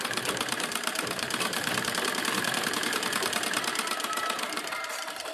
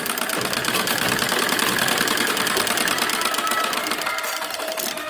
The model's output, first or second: first